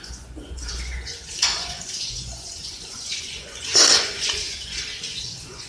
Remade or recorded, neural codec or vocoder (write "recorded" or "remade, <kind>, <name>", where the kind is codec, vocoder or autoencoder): remade, vocoder, Vocos